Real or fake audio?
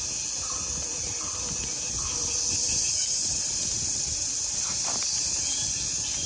real